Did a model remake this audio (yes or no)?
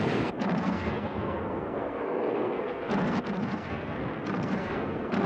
yes